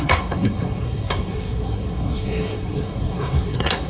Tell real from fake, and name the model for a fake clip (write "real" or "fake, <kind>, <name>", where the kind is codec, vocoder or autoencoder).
fake, codec, SNAC